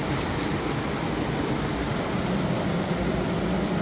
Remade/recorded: recorded